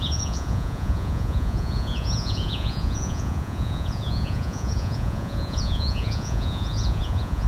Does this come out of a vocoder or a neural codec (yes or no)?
yes